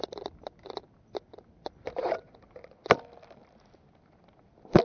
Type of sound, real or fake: real